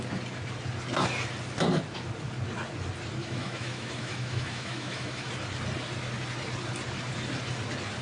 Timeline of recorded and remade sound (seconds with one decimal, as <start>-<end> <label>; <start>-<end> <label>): 0.0-3.2 recorded; 3.2-5.3 remade; 5.3-8.0 recorded

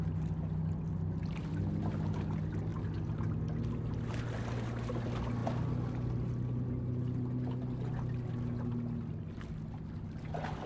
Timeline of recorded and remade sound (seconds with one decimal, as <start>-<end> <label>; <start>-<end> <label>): 0.0-10.7 recorded

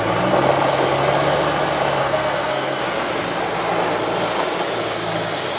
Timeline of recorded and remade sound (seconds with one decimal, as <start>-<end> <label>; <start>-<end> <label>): 0.0-2.0 recorded; 2.0-2.8 remade; 2.8-5.6 recorded

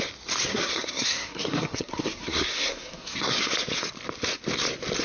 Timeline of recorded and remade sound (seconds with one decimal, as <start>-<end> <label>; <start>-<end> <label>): 0.0-0.5 recorded; 0.5-3.5 remade; 3.5-5.0 recorded

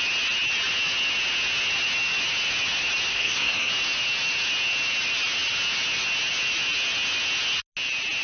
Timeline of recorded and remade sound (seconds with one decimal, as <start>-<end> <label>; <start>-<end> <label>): 0.0-3.1 recorded; 3.1-3.7 remade; 3.7-8.2 recorded